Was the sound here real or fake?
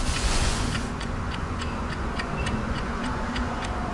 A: fake